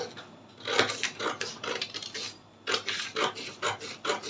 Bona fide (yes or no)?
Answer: yes